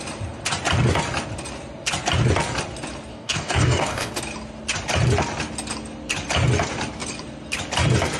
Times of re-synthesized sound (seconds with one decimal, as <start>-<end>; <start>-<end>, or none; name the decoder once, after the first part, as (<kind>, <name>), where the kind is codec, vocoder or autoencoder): 3.1-4.1 (codec, DAC)